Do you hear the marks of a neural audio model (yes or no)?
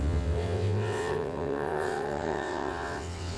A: yes